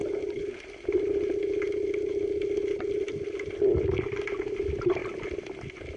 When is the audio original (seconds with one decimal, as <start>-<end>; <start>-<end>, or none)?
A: 0.0-6.0